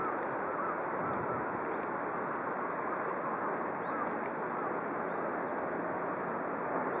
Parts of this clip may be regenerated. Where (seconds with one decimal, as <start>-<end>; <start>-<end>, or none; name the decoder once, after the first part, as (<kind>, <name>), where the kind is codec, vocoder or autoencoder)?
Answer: none

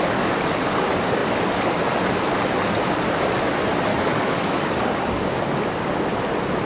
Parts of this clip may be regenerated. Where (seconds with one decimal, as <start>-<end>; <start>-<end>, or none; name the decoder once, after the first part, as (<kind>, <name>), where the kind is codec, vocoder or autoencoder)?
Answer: 3.9-5.4 (codec, DAC)

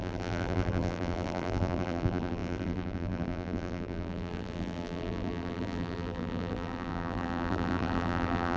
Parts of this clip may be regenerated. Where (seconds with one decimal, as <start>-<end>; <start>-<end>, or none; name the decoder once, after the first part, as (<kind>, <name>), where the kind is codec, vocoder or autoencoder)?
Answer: 0.0-8.6 (vocoder, BigVGAN v2)

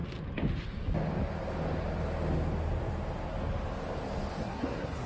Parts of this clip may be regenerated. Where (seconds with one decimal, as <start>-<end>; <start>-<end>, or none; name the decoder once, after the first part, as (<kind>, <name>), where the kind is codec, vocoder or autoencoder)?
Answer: 4.4-5.1 (codec, SNAC)